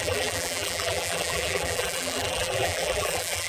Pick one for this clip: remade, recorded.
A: remade